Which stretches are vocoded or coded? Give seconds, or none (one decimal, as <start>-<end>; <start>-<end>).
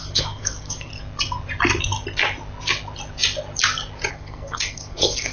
0.0-0.9; 4.1-5.3